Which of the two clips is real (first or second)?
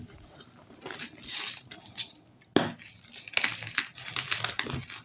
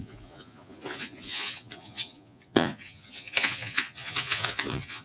first